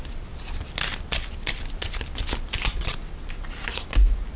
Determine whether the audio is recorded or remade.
recorded